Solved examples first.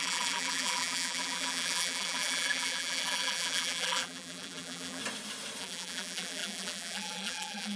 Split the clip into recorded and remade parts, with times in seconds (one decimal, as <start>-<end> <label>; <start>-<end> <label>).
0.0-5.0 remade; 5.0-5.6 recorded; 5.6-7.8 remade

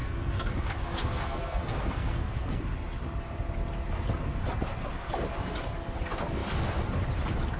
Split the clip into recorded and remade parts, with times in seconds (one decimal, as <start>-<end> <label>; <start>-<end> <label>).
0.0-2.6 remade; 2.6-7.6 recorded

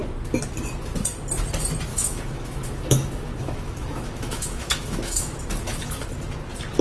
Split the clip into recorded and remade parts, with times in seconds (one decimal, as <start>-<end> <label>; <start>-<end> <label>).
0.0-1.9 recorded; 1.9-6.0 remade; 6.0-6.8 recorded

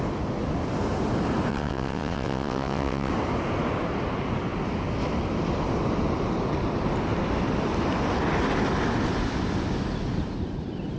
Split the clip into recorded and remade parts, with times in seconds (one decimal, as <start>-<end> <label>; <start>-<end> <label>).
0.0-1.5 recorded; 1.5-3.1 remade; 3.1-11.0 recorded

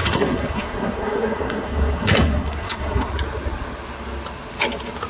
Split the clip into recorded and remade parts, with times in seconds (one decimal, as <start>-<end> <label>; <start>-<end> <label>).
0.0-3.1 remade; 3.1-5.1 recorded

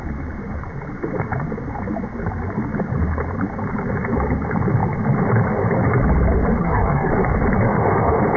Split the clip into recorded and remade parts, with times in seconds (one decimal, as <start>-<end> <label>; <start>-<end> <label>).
0.0-6.6 recorded; 6.6-7.1 remade; 7.1-8.4 recorded

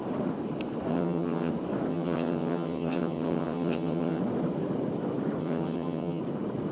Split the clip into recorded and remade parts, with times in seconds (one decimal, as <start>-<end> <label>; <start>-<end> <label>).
0.0-0.9 recorded; 0.9-1.5 remade; 1.5-1.9 recorded; 1.9-4.2 remade; 4.2-5.4 recorded; 5.4-6.2 remade; 6.2-6.7 recorded